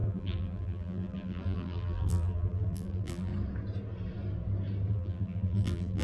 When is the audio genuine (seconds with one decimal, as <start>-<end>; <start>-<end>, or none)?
3.3-4.9